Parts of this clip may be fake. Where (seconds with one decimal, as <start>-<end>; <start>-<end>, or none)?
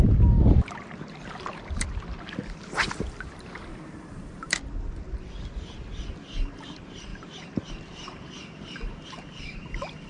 3.7-4.5; 7.1-7.7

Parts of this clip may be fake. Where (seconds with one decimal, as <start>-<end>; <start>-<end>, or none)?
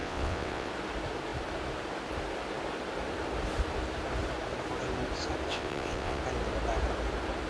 0.0-0.7; 5.5-6.2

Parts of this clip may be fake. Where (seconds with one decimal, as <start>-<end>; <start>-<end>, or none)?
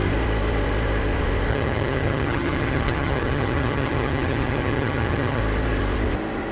1.5-5.4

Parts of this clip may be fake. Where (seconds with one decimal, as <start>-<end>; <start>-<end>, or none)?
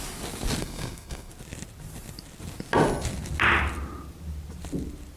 0.6-1.3